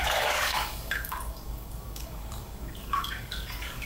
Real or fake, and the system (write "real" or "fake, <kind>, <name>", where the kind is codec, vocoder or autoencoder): fake, codec, DAC